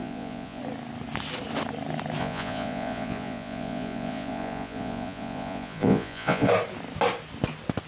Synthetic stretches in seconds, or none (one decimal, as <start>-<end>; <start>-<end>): 0.0-0.6; 2.2-6.5